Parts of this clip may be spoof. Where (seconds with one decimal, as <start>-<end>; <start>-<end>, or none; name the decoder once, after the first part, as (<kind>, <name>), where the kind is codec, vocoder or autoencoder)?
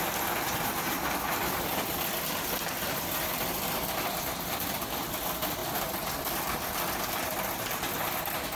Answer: none